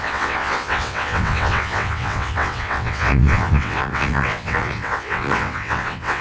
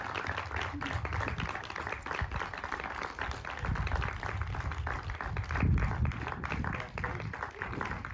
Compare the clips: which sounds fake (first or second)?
first